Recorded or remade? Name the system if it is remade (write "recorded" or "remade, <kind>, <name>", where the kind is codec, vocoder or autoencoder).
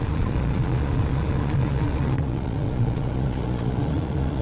remade, vocoder, Vocos